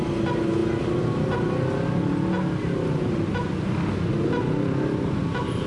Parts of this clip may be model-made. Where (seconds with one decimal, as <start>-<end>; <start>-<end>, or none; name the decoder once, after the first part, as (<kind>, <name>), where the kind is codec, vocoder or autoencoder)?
none